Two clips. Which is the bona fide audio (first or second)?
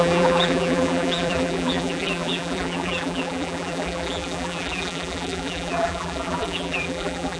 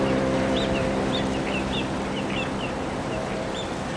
second